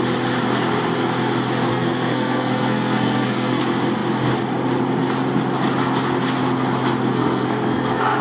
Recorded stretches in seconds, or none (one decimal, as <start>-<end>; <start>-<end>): 0.0-1.7; 3.6-7.1